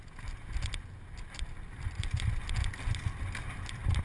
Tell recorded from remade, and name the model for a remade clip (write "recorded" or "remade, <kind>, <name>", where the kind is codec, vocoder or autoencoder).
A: recorded